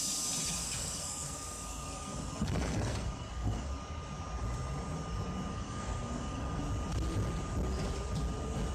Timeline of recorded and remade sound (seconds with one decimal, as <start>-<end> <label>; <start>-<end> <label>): 0.0-0.6 recorded; 0.6-3.7 remade; 3.7-5.5 recorded; 5.5-6.6 remade; 6.6-8.7 recorded